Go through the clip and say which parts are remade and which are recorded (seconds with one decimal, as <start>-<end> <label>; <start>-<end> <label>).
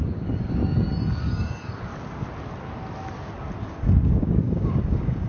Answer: 0.0-0.6 remade; 0.6-1.1 recorded; 1.1-1.9 remade; 1.9-3.6 recorded; 3.6-5.3 remade